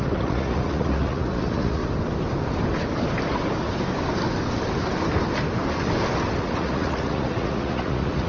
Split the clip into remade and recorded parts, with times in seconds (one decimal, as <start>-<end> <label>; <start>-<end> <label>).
0.0-1.8 remade; 1.8-6.4 recorded; 6.4-8.3 remade